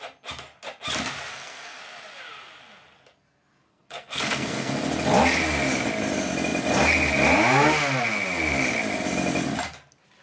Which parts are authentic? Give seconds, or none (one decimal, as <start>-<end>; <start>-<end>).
0.0-1.3; 1.8-3.7; 4.7-10.2